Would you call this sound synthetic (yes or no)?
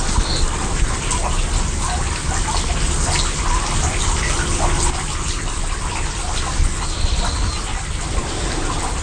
no